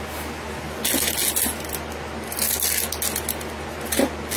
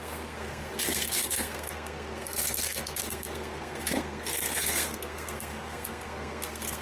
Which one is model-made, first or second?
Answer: second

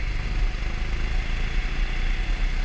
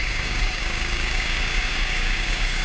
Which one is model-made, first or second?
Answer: second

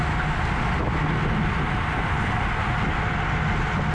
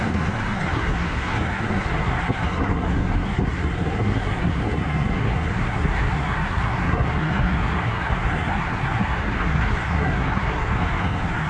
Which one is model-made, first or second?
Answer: second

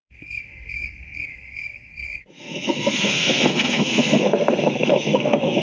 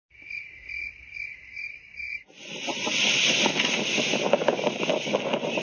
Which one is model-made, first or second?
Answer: first